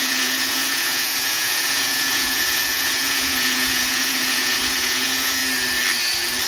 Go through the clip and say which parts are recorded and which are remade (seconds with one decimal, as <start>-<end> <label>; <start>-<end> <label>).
0.0-5.4 remade; 5.4-6.5 recorded

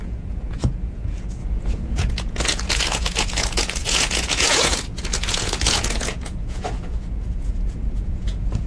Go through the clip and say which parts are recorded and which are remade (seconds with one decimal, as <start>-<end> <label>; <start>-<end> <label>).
0.0-8.7 remade

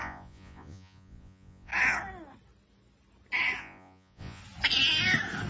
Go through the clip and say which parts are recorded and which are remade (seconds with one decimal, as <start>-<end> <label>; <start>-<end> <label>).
0.0-1.7 remade; 1.7-3.6 recorded; 3.6-4.4 remade; 4.4-5.5 recorded

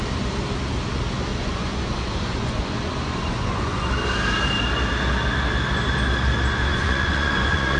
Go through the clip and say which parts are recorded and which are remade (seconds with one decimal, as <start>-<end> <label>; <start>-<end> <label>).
0.0-1.3 recorded; 1.3-3.9 remade; 3.9-6.7 recorded; 6.7-7.8 remade

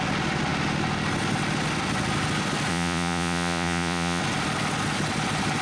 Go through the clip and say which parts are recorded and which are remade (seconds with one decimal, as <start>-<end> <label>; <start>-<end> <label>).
0.0-2.7 recorded; 2.7-4.2 remade; 4.2-5.6 recorded

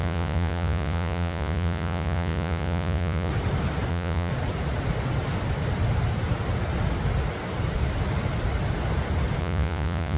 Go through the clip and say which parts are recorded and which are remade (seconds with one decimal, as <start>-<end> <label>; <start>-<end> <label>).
0.0-3.3 remade; 3.3-3.9 recorded; 3.9-4.3 remade; 4.3-9.4 recorded; 9.4-10.2 remade